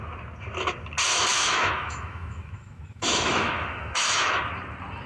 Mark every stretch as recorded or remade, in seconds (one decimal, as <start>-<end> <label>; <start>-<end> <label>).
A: 0.0-1.3 recorded; 1.3-4.4 remade; 4.4-5.1 recorded